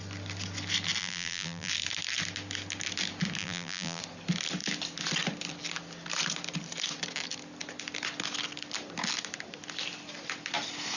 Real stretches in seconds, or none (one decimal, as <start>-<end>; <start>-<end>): 0.0-1.0; 1.7-3.4; 4.0-11.0